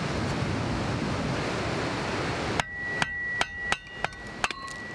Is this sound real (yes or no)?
yes